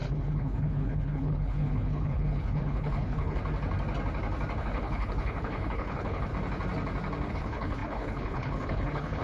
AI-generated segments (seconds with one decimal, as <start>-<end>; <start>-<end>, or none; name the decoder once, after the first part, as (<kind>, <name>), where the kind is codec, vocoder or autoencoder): 0.0-3.4 (codec, HILCodec); 4.6-6.3; 7.3-9.2